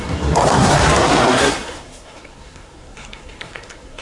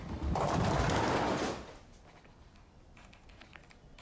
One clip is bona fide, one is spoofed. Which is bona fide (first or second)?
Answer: second